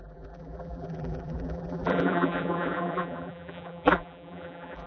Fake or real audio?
fake